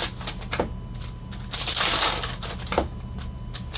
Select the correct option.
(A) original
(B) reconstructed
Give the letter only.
A